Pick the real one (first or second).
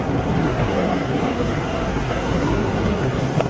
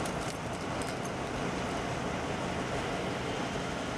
second